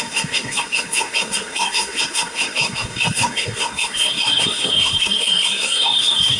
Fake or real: fake